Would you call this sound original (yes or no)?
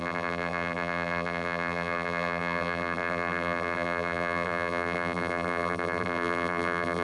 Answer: no